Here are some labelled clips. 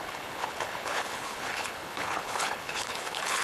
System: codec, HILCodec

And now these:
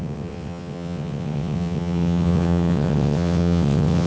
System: vocoder, WaveNeXt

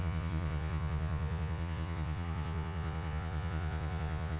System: vocoder, Vocos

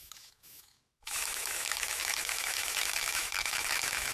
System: autoencoder, DAC-VAE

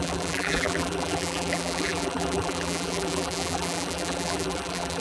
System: vocoder, BigVGAN v2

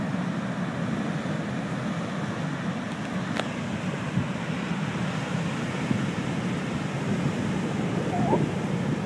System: none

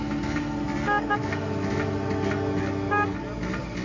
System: none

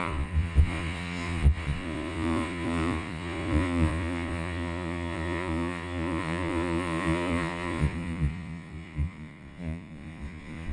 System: vocoder, Vocos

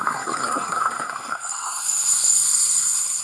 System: codec, SNAC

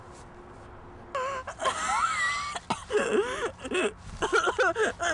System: none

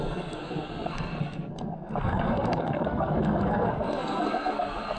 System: codec, SNAC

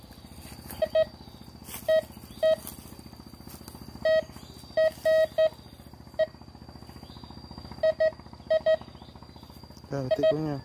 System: none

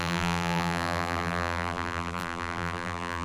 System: vocoder, BigVGAN v2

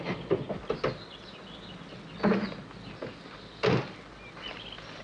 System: none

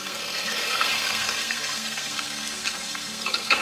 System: codec, SNAC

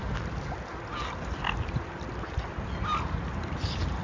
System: none